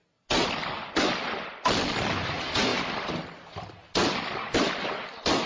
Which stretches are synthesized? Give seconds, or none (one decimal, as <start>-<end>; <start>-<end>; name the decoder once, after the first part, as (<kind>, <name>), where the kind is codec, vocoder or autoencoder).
none